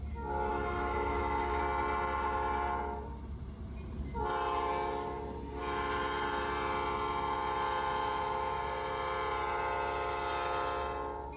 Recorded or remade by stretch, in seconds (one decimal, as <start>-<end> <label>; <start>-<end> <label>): 0.0-0.5 recorded; 0.5-1.6 remade; 1.6-11.4 recorded